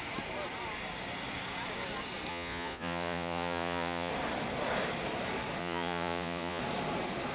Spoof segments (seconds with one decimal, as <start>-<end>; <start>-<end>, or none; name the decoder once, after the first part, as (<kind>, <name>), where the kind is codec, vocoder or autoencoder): 2.3-4.1 (vocoder, Vocos); 5.6-6.6